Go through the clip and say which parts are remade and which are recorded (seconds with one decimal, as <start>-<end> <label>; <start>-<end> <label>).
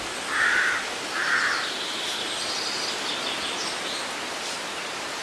0.0-5.2 recorded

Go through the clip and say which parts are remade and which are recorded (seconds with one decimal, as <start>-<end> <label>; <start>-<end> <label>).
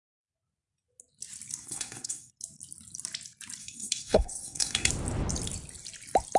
0.0-1.6 recorded; 1.6-2.3 remade; 2.3-3.6 recorded; 3.6-4.9 remade; 4.9-6.4 recorded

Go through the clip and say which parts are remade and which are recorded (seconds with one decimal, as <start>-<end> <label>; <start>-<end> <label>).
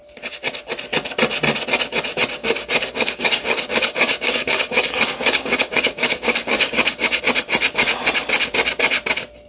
0.0-2.4 recorded; 2.4-7.2 remade; 7.2-9.5 recorded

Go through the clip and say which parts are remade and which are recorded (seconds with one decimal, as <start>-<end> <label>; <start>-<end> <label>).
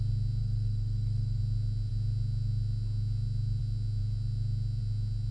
0.0-0.4 recorded; 0.4-1.4 remade; 1.4-5.3 recorded